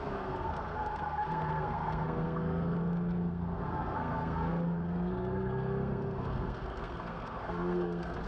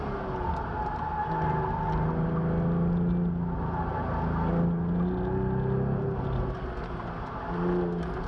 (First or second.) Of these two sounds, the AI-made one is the first